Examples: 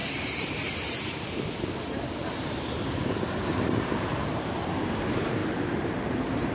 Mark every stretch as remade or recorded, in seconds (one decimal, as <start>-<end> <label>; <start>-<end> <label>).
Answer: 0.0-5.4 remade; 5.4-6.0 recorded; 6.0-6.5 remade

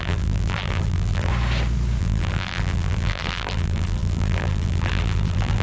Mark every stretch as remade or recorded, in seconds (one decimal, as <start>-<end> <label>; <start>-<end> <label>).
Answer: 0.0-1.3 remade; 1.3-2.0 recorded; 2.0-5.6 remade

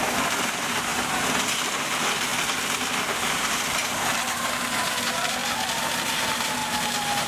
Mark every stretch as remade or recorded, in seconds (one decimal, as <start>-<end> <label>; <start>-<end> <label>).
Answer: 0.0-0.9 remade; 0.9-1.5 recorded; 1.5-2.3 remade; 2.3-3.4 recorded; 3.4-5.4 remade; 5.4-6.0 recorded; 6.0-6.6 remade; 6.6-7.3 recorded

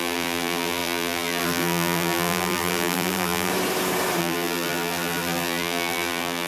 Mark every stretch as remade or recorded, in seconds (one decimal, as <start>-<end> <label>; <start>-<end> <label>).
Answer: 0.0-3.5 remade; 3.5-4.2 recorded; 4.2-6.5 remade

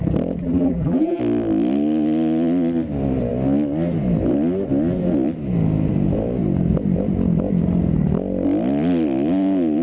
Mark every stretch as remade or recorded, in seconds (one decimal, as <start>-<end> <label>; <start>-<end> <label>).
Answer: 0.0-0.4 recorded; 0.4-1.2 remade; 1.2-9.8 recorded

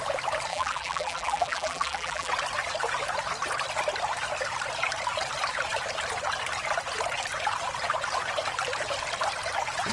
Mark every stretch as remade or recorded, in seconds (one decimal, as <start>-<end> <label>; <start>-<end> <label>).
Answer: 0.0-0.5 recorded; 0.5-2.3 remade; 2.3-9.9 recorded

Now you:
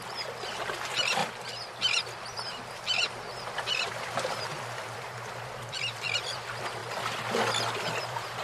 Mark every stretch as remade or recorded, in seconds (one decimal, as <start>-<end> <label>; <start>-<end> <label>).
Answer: 0.0-1.2 remade; 1.2-1.8 recorded; 1.8-6.8 remade; 6.8-8.0 recorded; 8.0-8.4 remade